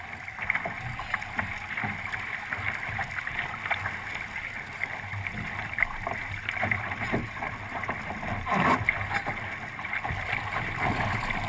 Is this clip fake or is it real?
real